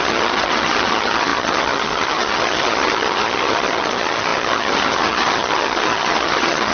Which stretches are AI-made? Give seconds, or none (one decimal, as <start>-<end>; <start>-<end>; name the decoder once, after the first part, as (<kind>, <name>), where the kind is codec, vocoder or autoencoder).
0.0-6.7 (vocoder, HiFi-GAN)